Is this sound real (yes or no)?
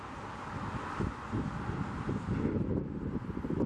yes